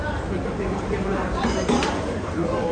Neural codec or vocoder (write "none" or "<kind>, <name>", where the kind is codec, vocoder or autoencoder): vocoder, BigVGAN v2